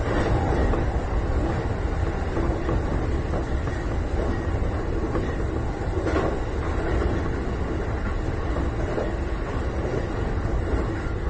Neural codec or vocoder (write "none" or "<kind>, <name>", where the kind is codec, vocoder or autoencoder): none